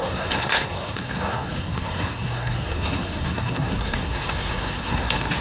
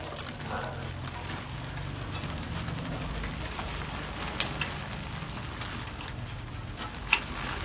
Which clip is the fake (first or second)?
first